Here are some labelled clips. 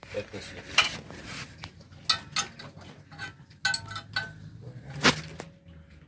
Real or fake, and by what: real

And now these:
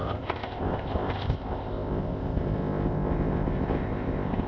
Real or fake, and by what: fake, codec, ZipCodec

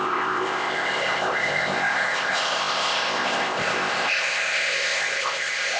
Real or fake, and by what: fake, codec, ZipCodec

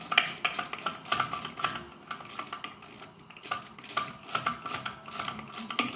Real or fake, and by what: real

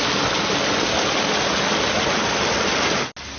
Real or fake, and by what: real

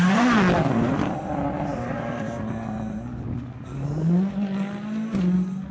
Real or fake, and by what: real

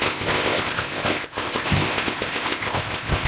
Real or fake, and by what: fake, codec, ZipCodec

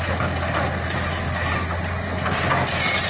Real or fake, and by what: real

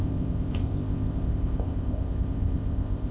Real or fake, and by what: fake, codec, ZipCodec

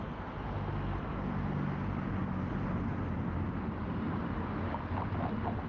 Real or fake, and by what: real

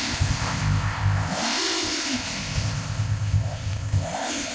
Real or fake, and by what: fake, codec, ZipCodec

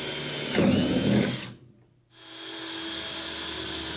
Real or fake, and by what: real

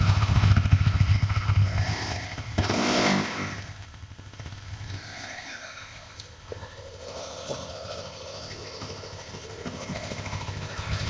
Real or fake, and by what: fake, codec, ZipCodec